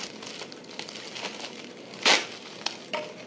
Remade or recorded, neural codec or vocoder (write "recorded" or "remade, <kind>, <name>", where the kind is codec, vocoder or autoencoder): recorded